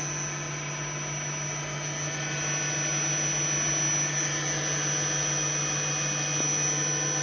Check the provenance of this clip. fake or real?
real